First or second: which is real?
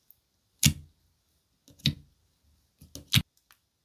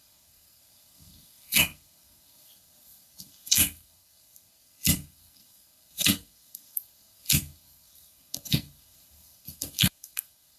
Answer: first